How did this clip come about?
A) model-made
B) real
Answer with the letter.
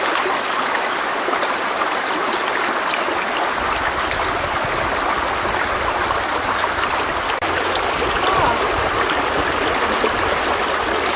B